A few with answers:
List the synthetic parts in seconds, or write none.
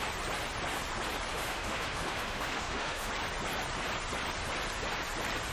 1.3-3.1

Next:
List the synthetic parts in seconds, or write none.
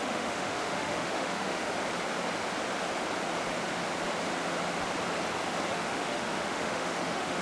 0.0-1.7; 5.7-7.4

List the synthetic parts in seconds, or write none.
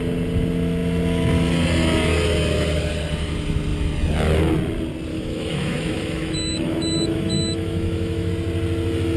5.1-8.3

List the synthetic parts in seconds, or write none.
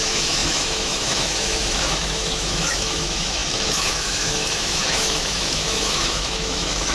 0.0-6.9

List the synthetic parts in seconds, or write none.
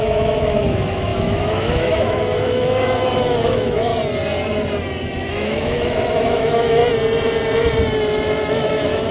0.0-3.9; 5.3-6.8; 8.5-9.1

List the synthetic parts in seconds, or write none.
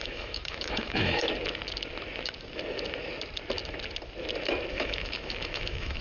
0.0-1.3; 4.7-6.0